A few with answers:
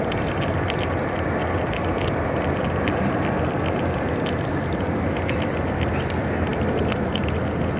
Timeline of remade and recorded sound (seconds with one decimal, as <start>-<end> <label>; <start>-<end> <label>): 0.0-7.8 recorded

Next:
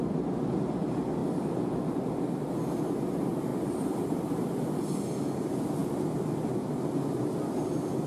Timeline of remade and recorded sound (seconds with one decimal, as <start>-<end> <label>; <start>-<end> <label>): 0.0-3.5 recorded; 3.5-4.6 remade; 4.6-5.8 recorded; 5.8-6.5 remade; 6.5-8.1 recorded

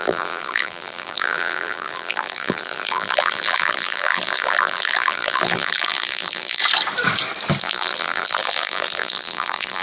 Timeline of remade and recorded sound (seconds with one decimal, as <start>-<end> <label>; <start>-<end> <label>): 0.0-6.6 remade; 6.6-7.6 recorded; 7.6-9.8 remade